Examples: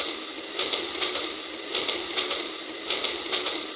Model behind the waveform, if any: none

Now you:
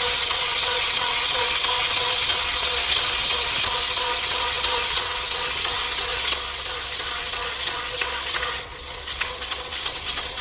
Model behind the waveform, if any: vocoder, WaveNeXt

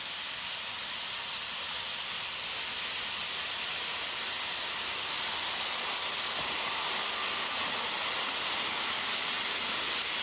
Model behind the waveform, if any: none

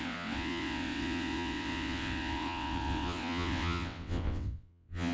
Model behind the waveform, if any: vocoder, WaveNeXt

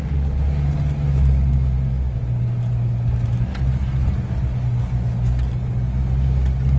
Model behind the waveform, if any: none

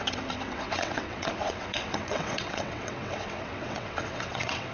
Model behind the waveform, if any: vocoder, WaveNeXt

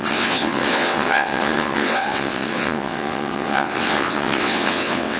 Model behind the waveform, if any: vocoder, WaveNeXt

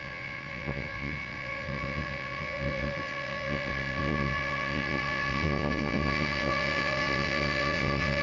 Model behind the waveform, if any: vocoder, WaveNeXt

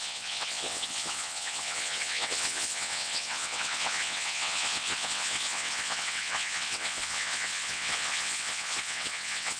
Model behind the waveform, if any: vocoder, WaveNeXt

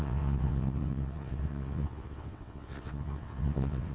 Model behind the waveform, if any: vocoder, WaveNeXt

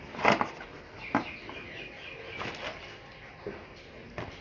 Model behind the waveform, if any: none